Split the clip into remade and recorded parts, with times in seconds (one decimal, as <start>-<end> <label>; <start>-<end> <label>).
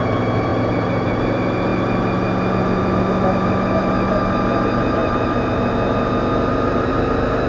0.0-7.5 recorded